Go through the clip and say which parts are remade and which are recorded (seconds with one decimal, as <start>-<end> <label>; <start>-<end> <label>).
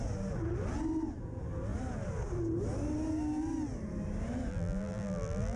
0.0-4.5 recorded; 4.5-5.6 remade